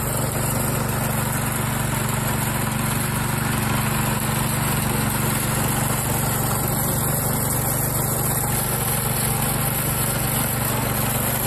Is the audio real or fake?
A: real